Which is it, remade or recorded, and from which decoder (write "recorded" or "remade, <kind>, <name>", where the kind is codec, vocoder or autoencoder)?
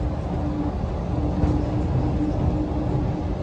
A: recorded